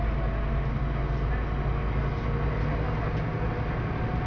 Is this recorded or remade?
recorded